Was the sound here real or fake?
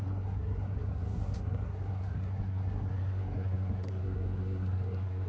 fake